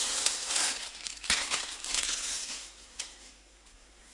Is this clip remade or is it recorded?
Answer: remade